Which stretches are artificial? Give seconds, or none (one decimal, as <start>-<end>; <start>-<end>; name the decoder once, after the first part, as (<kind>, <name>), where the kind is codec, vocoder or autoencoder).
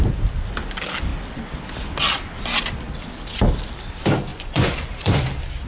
4.3-5.2 (vocoder, Vocos)